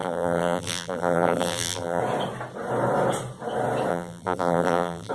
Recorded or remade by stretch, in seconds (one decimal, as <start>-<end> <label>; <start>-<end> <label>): 0.0-2.0 remade; 2.0-3.9 recorded; 3.9-5.1 remade